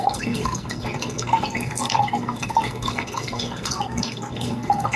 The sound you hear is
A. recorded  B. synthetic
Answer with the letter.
B